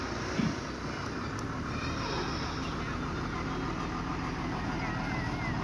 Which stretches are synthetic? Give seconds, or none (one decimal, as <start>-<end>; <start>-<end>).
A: none